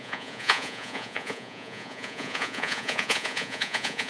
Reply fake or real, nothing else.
fake